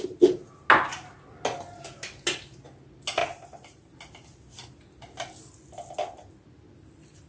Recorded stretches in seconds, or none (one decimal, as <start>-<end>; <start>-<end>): 0.0-3.2; 3.9-7.3